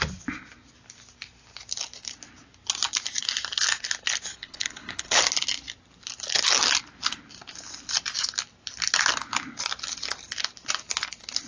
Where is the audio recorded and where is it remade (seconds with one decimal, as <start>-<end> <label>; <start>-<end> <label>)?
0.0-4.3 recorded; 4.3-5.2 remade; 5.2-11.5 recorded